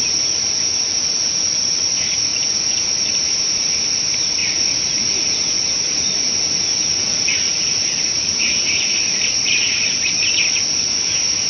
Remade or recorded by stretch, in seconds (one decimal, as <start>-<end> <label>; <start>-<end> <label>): 0.0-4.4 recorded; 4.4-4.9 remade; 4.9-7.0 recorded; 7.0-8.5 remade; 8.5-11.5 recorded